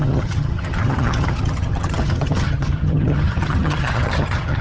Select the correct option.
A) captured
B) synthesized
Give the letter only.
B